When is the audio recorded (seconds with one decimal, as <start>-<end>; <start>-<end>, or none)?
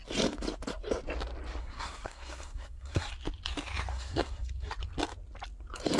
0.0-1.6; 3.1-3.9; 4.7-6.0